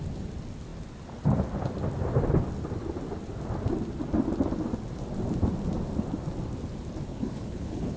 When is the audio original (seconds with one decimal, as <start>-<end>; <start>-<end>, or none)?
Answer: 0.0-7.1